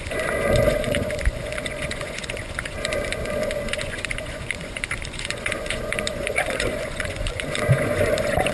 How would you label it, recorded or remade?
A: remade